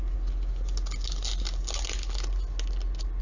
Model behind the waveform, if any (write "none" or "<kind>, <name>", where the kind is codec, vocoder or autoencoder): none